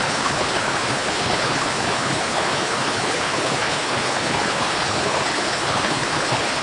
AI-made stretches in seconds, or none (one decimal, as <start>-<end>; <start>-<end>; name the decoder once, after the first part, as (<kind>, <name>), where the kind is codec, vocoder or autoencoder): 0.0-6.6 (codec, HILCodec)